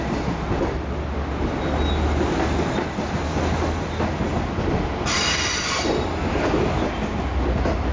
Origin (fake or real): real